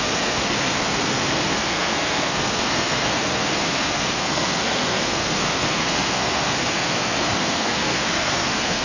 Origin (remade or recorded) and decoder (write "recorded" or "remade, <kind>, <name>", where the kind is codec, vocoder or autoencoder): remade, codec, SNAC